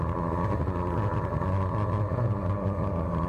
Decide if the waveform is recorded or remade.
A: recorded